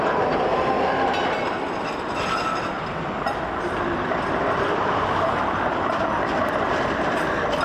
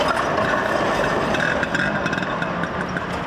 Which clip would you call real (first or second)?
second